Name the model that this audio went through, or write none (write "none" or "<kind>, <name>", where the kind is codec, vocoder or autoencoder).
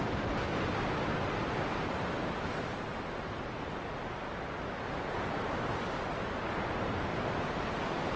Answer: none